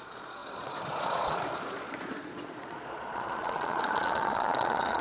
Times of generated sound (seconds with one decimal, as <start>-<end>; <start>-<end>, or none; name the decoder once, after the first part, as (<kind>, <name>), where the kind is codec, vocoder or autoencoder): 0.0-5.0 (vocoder, Vocos)